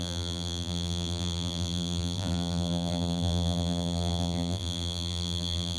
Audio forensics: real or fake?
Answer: fake